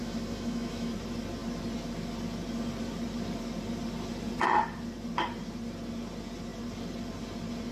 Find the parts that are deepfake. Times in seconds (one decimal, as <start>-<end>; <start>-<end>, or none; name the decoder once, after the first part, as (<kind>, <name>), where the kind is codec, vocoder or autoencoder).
0.0-0.9 (autoencoder, DAC-VAE)